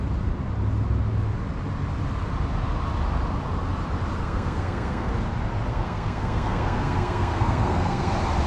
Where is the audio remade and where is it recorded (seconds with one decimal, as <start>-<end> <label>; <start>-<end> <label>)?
0.0-4.2 recorded; 4.2-5.1 remade; 5.1-5.7 recorded; 5.7-8.1 remade; 8.1-8.5 recorded